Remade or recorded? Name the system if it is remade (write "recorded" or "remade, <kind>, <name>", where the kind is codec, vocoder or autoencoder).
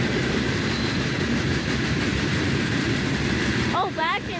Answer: remade, vocoder, BigVGAN v2